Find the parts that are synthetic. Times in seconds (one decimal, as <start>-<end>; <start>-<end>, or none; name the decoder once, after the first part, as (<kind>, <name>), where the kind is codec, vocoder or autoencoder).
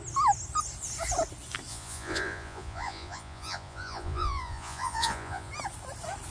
1.7-5.5 (vocoder, Vocos)